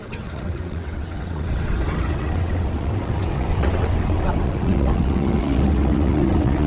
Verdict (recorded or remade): remade